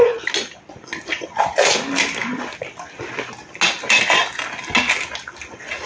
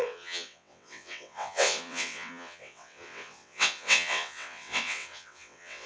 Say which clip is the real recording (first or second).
first